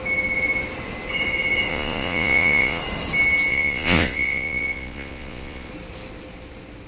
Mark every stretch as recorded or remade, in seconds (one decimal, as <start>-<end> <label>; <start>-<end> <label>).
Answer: 0.0-1.7 recorded; 1.7-2.8 remade; 2.8-3.5 recorded; 3.5-5.7 remade; 5.7-6.9 recorded